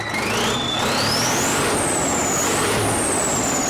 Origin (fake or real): real